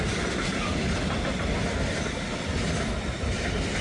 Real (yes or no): yes